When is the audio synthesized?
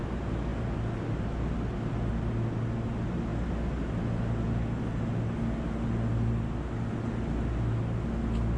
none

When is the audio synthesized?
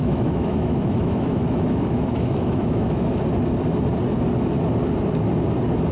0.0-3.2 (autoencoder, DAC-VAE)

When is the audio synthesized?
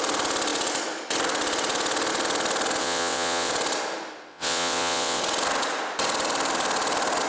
2.8-3.5 (vocoder, WaveNeXt); 4.3-5.2